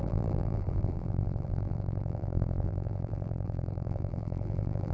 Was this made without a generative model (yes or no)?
no